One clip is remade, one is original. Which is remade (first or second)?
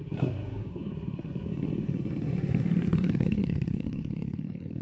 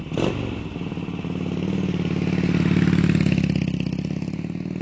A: first